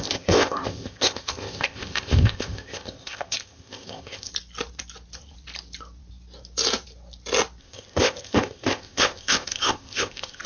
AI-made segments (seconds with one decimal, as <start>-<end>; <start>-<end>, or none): 0.0-4.3; 7.6-10.5